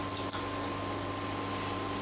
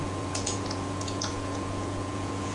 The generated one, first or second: second